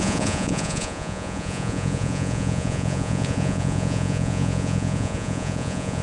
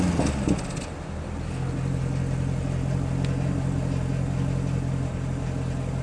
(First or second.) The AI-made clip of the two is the first